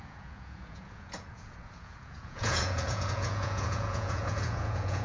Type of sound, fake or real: fake